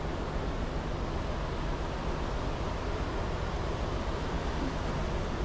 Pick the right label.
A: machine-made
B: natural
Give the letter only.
B